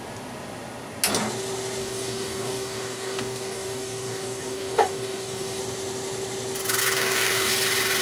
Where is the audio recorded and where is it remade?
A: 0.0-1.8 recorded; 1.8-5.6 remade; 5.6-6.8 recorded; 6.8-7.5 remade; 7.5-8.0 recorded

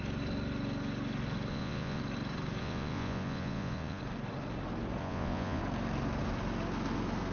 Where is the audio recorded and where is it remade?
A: 0.0-1.5 recorded; 1.5-2.0 remade; 2.0-2.6 recorded; 2.6-4.0 remade; 4.0-5.0 recorded; 5.0-5.6 remade; 5.6-7.3 recorded

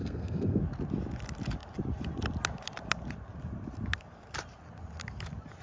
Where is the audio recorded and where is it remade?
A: 0.0-0.6 remade; 0.6-5.6 recorded

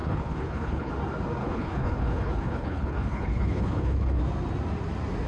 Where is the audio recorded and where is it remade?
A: 0.0-0.9 remade; 0.9-1.4 recorded; 1.4-4.2 remade; 4.2-5.3 recorded

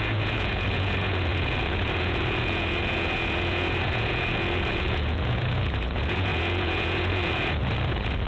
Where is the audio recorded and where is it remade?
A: 0.0-8.3 remade